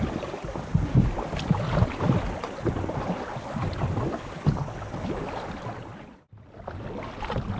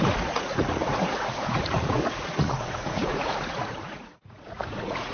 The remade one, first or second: second